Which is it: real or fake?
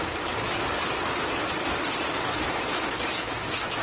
real